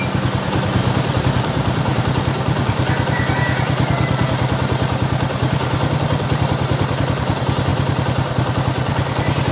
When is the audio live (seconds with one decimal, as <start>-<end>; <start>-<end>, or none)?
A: 0.0-0.8; 2.0-7.7; 8.5-9.5